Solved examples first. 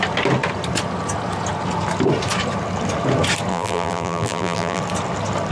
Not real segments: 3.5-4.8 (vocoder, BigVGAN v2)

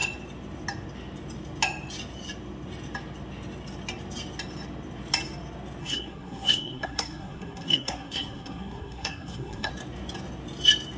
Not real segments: 5.8-9.7 (codec, SNAC)

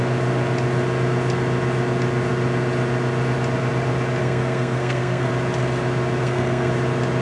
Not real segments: 4.2-5.3 (codec, SNAC); 6.2-6.7

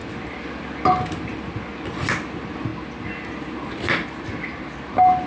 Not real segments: none

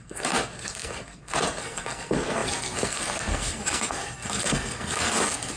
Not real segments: 0.0-5.6 (codec, SNAC)

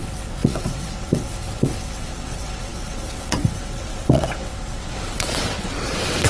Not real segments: 0.0-6.3 (vocoder, WaveNeXt)

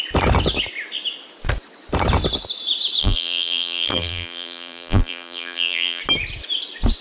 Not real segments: 3.0-6.0 (vocoder, BigVGAN v2)

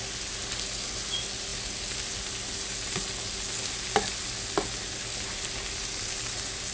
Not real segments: none